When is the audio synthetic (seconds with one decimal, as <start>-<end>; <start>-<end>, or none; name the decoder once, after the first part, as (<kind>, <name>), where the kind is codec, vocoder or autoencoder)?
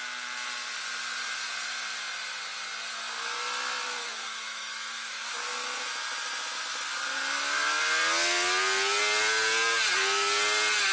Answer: 4.0-5.5 (autoencoder, DAC-VAE)